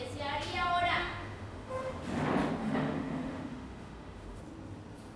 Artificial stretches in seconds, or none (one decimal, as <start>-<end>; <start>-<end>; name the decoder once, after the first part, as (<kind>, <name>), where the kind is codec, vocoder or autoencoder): 1.0-1.7 (autoencoder, DAC-VAE); 2.6-4.4